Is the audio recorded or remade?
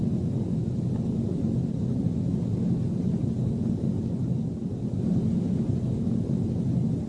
recorded